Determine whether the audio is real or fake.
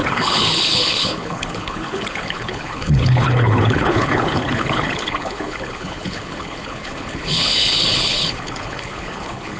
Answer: fake